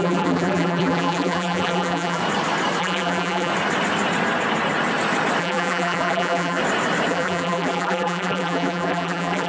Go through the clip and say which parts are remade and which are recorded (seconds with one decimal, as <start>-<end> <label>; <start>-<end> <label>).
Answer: 0.0-2.2 remade; 2.2-2.8 recorded; 2.8-3.5 remade; 3.5-5.4 recorded; 5.4-6.6 remade; 6.6-7.1 recorded; 7.1-9.5 remade